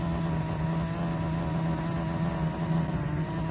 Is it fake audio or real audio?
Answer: real